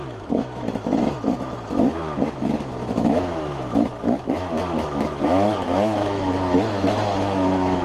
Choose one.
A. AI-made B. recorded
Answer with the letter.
A